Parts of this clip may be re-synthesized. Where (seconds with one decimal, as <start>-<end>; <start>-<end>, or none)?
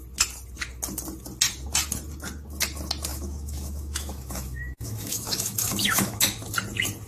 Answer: 3.1-6.5